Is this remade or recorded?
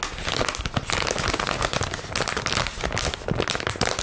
recorded